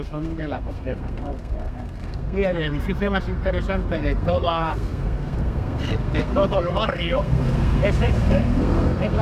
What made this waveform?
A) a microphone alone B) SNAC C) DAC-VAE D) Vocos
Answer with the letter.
B